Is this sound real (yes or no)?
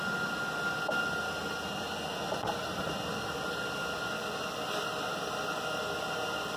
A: yes